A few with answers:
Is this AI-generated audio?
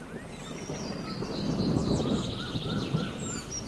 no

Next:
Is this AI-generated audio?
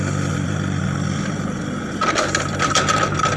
no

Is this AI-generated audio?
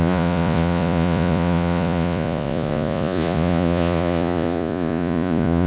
yes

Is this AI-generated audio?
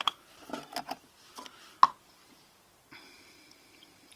no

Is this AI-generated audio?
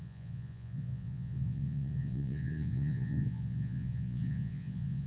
yes